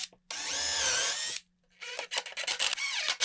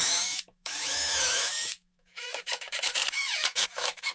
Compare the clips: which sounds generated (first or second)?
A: second